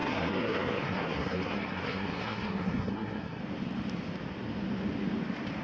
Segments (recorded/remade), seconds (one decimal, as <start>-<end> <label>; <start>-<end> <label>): 0.0-3.4 remade; 3.4-5.6 recorded